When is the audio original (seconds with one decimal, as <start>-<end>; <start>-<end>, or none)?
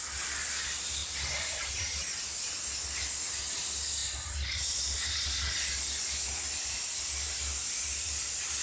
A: 0.0-8.6